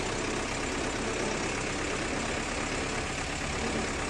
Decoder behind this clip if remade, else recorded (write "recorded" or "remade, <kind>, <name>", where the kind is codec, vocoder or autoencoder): recorded